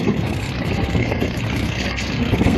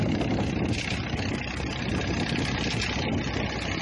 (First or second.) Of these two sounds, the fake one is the first